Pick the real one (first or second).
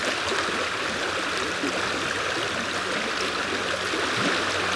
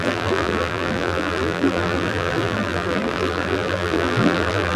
first